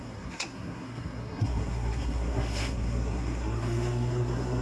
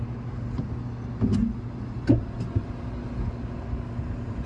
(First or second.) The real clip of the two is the second